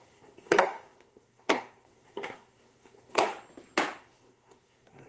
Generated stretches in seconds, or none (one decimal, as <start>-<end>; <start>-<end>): 0.0-3.3; 4.0-5.1